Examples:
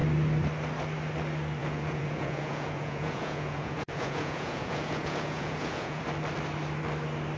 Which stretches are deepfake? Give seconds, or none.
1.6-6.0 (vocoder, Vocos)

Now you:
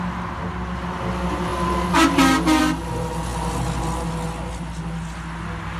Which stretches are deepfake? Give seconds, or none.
none

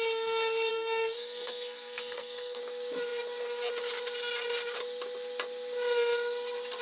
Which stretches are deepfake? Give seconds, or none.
0.7-2.6 (codec, SNAC)

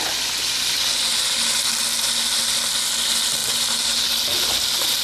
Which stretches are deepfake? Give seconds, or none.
none

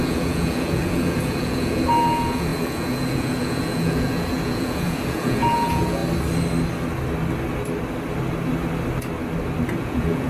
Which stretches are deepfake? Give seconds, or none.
0.0-6.0 (vocoder, Vocos); 9.8-10.3

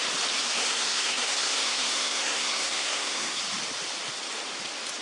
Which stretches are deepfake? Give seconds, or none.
0.4-3.4 (codec, SNAC)

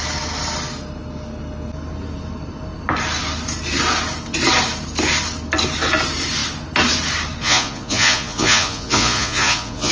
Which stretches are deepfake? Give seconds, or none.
7.4-9.9 (vocoder, Vocos)

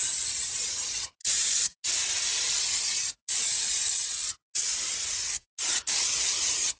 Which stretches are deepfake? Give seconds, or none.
none